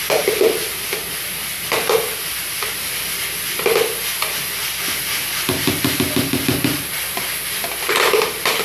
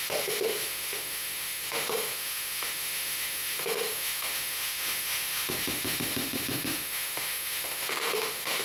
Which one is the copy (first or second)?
second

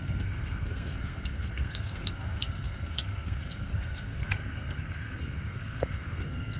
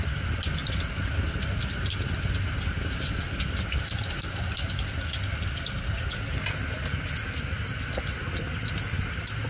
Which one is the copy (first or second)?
first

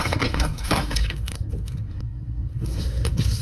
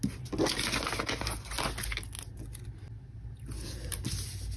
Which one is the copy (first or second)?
first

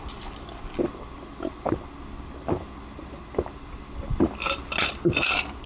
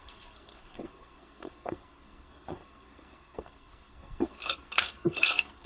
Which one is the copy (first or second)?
second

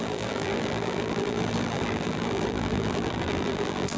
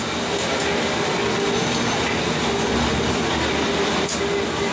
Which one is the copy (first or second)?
first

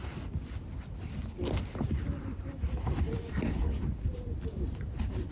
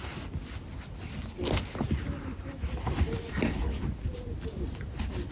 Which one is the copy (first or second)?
first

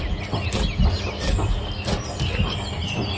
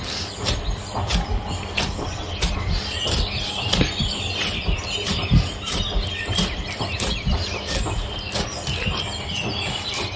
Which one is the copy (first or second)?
second